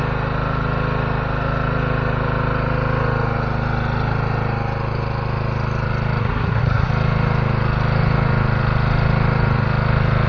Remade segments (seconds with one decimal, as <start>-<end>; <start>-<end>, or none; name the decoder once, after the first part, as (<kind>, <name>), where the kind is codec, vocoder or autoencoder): 6.2-6.9 (codec, SNAC)